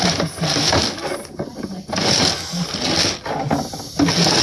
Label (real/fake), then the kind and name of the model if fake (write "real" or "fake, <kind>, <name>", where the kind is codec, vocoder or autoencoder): real